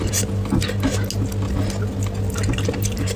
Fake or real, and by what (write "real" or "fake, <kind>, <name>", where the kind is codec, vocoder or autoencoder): real